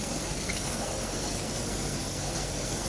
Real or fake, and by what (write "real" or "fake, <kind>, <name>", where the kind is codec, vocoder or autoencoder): fake, codec, SNAC